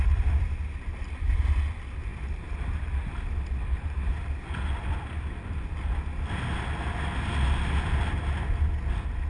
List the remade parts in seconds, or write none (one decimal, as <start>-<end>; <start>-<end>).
none